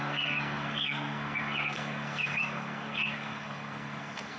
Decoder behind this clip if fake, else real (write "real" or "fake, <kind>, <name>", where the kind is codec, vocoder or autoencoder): fake, codec, SNAC